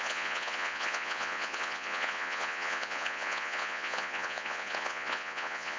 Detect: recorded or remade remade